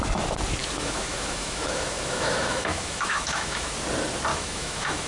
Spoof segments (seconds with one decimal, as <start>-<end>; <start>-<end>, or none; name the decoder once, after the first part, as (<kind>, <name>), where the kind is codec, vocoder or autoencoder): 0.6-3.7 (autoencoder, DAC-VAE); 4.3-5.1